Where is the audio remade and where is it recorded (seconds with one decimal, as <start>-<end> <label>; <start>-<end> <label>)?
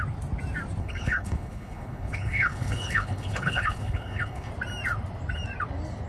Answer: 0.0-0.8 recorded; 0.8-4.5 remade; 4.5-6.1 recorded